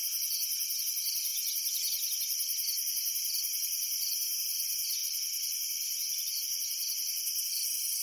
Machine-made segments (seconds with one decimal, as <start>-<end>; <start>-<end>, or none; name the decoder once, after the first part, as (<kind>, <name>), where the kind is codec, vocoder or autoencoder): 0.0-5.0 (vocoder, BigVGAN v2); 6.4-8.0